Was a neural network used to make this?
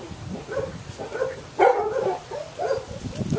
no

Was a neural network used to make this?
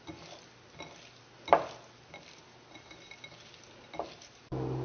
no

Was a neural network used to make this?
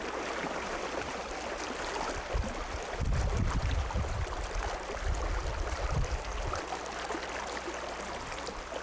no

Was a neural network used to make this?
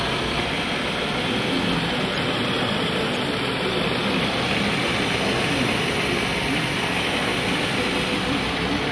no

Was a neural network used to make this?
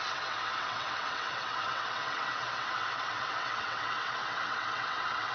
yes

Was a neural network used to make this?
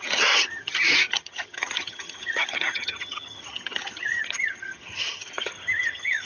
yes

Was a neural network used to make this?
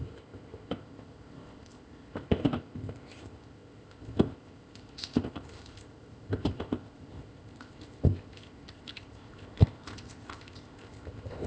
yes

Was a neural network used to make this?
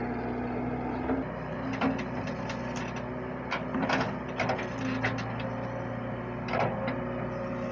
no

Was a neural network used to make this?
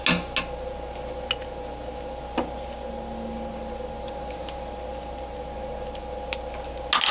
no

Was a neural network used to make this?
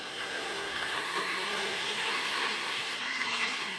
yes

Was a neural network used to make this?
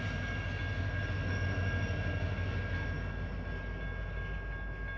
no